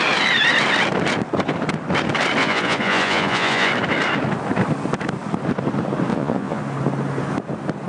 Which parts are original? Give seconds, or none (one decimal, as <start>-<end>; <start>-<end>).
0.0-2.4; 3.7-6.1; 6.6-7.9